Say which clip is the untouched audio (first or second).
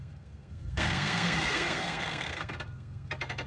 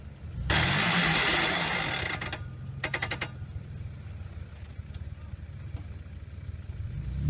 second